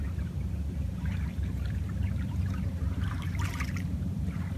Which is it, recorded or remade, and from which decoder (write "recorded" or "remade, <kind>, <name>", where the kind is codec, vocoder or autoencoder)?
remade, vocoder, BigVGAN v2